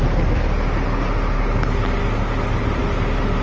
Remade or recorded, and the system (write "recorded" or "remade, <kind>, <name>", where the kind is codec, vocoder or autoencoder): recorded